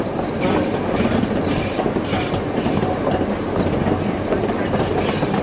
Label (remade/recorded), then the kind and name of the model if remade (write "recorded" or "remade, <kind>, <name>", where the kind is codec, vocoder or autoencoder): recorded